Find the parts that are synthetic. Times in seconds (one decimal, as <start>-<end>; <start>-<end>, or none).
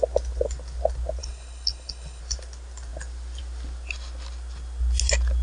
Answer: 1.2-2.2